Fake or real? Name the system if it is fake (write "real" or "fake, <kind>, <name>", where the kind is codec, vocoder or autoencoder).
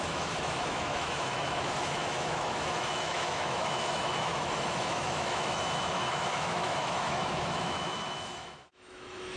fake, autoencoder, DAC-VAE